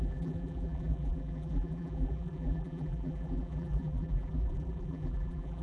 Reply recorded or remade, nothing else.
remade